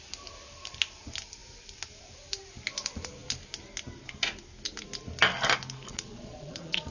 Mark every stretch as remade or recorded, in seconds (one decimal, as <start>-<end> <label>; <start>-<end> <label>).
0.0-5.9 recorded; 5.9-6.9 remade